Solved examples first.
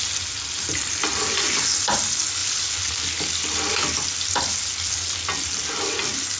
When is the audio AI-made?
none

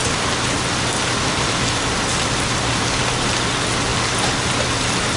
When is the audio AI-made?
none

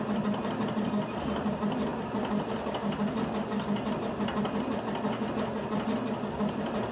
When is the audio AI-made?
none

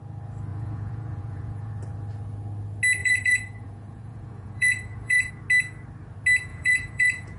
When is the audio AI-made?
0.5-1.7 (vocoder, Vocos); 3.0-5.3; 6.5-7.4

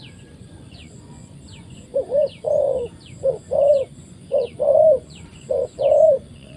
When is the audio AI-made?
0.0-6.6 (vocoder, Vocos)

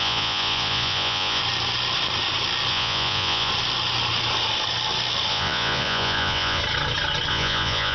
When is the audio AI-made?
0.0-1.4 (vocoder, Vocos); 2.7-3.5; 5.3-6.6; 7.3-7.9